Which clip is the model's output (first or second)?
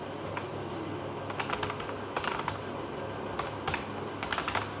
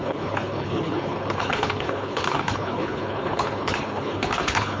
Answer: second